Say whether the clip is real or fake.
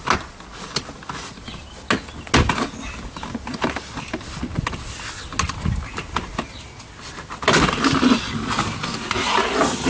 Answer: real